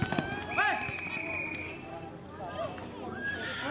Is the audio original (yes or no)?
yes